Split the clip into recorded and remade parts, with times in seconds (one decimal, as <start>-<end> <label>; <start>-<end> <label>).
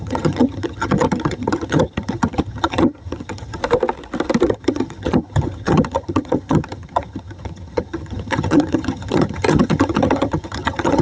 0.0-3.6 remade; 3.6-4.5 recorded; 4.5-11.0 remade